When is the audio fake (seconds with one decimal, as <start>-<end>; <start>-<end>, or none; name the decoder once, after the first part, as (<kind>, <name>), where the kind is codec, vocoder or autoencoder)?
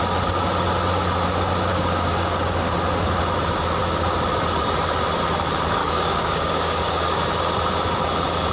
1.7-2.7 (codec, DAC); 5.8-7.2